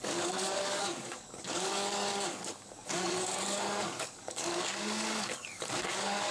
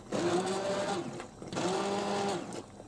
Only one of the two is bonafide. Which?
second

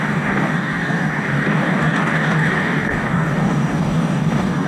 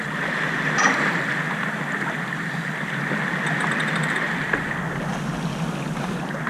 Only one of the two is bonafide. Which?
second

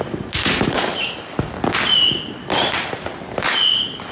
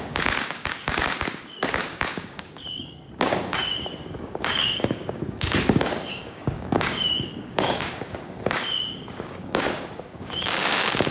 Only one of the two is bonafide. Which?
first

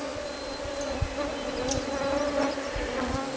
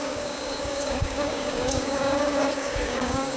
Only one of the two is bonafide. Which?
first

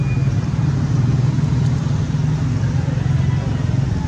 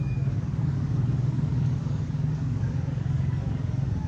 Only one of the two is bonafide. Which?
first